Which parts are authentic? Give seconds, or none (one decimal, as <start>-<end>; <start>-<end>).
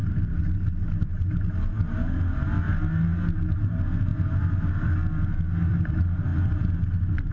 0.0-7.3